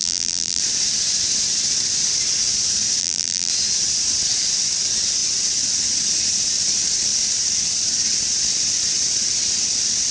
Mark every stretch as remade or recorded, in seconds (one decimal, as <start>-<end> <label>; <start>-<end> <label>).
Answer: 0.0-0.6 remade; 0.6-3.0 recorded; 3.0-3.5 remade; 3.5-10.1 recorded